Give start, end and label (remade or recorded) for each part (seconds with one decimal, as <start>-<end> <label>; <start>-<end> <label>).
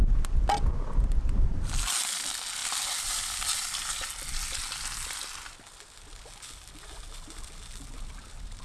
0.0-8.6 recorded